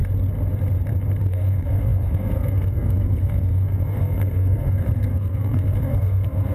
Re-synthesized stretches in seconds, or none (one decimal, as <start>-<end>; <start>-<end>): 1.2-6.5